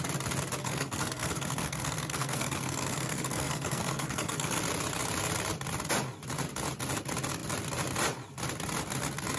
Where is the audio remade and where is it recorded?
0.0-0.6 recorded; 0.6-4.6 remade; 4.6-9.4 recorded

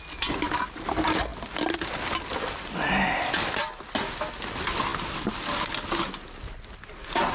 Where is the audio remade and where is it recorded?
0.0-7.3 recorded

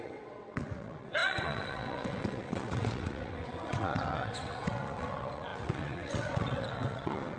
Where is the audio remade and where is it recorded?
0.0-7.4 remade

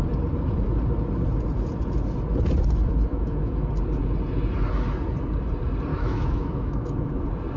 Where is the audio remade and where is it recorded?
0.0-3.1 recorded; 3.1-3.7 remade; 3.7-5.9 recorded; 5.9-7.1 remade; 7.1-7.6 recorded